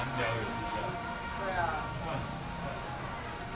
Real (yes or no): yes